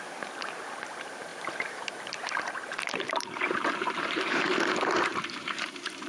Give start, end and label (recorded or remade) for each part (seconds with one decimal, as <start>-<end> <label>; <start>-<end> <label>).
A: 0.0-6.1 remade